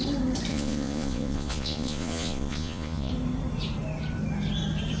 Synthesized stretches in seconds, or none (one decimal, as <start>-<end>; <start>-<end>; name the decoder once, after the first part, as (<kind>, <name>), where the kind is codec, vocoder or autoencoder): 0.5-3.1 (vocoder, Vocos)